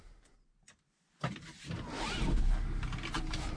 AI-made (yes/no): no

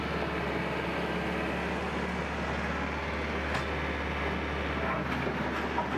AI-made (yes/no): no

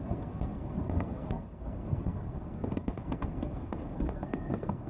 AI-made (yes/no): yes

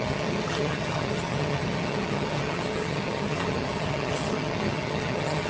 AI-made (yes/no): yes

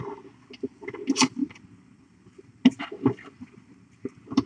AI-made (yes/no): no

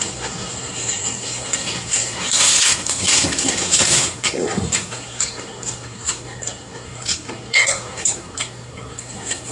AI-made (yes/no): yes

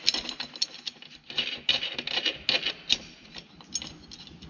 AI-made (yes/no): no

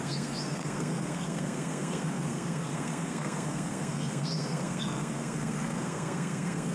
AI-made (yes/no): yes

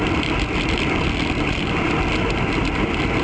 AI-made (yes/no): no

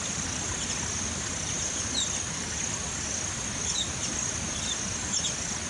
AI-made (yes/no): no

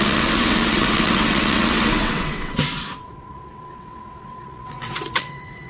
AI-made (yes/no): yes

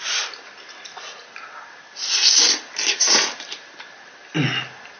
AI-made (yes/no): no